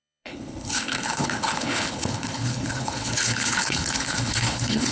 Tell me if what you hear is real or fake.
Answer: fake